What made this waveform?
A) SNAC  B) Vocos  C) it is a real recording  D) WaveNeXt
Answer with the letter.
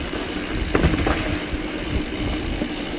C